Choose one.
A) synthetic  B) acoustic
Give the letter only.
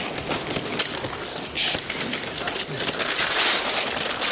B